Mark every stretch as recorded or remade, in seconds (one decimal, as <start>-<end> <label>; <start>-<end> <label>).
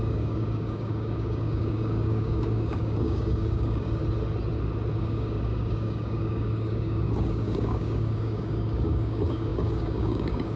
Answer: 0.0-4.0 remade; 4.0-5.0 recorded; 5.0-10.6 remade